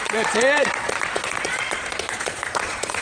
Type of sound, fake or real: fake